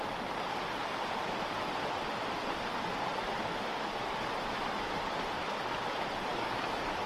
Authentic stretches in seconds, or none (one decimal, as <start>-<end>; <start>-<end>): 0.0-6.3